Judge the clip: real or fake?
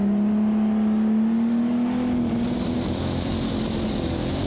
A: real